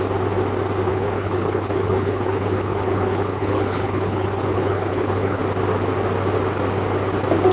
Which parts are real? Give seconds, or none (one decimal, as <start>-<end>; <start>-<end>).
0.0-0.9; 5.4-7.5